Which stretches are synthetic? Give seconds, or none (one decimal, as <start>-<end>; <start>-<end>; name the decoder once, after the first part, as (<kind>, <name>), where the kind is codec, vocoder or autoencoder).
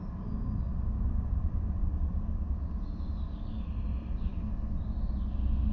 none